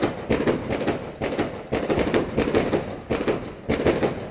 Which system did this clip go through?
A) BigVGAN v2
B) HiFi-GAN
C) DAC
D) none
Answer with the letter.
D